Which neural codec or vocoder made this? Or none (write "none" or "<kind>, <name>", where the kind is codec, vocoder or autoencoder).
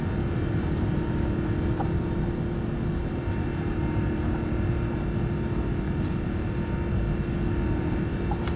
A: none